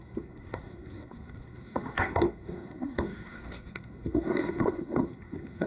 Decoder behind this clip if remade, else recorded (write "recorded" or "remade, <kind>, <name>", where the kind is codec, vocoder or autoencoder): remade, codec, SNAC